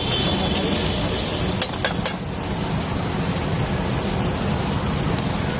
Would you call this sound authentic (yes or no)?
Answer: yes